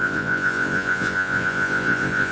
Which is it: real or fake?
fake